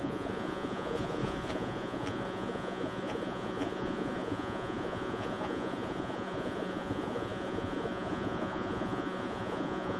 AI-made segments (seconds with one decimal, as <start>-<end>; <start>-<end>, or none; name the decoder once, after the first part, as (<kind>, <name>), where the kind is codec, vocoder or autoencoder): 0.0-10.0 (vocoder, Vocos)